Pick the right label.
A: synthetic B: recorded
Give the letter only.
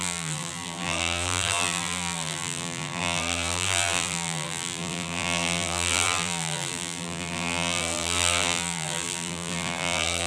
A